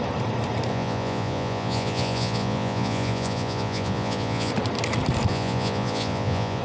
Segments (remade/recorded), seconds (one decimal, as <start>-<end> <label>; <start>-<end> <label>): 0.0-0.7 recorded; 0.7-4.5 remade; 4.5-5.3 recorded; 5.3-6.6 remade